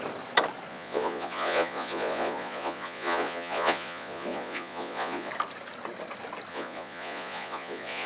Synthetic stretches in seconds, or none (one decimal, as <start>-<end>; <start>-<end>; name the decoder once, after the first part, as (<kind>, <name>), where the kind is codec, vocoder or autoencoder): 0.7-5.3 (vocoder, Vocos); 6.5-8.1